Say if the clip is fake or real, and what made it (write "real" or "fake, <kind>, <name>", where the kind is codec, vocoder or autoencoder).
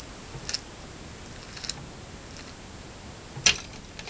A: real